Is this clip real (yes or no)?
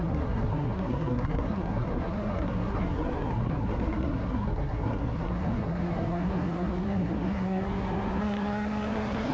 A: no